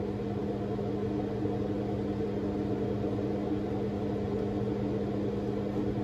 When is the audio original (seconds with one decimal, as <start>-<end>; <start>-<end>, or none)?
0.0-6.0